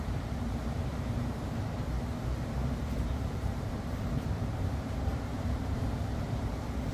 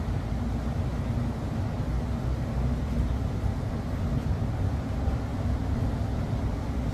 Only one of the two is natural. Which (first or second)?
second